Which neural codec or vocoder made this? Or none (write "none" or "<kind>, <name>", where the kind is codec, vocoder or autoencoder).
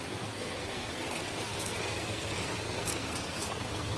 codec, SNAC